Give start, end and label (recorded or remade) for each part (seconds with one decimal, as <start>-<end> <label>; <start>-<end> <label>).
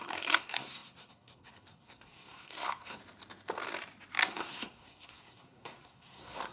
0.0-3.0 remade; 3.0-4.3 recorded; 4.3-6.5 remade